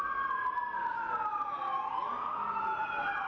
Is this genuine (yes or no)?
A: yes